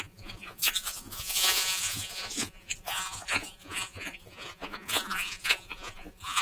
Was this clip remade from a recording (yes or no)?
yes